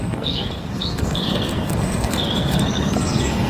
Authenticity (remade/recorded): remade